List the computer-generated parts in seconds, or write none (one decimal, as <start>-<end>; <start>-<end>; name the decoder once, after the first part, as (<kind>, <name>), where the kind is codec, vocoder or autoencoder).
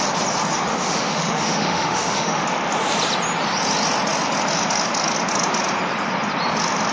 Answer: 0.7-2.4 (autoencoder, DAC-VAE)